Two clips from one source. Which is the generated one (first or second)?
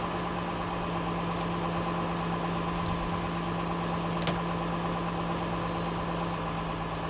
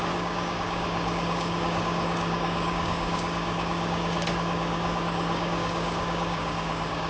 second